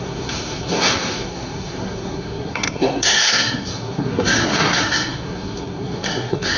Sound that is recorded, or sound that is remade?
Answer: remade